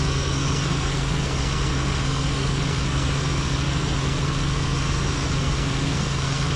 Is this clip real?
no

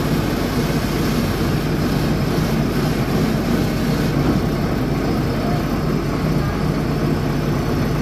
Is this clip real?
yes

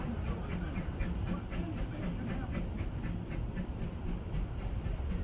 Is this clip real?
yes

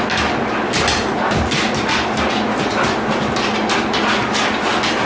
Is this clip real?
yes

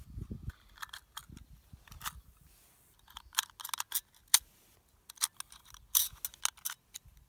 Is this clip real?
yes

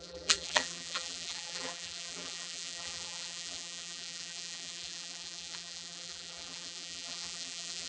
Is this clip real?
no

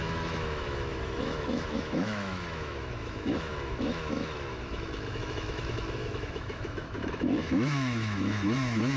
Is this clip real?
no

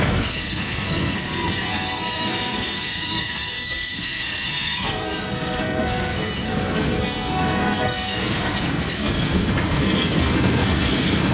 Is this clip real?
no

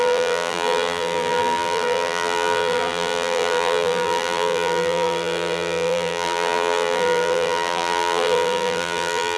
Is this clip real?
no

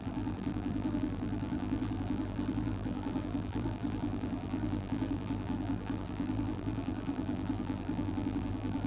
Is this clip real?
no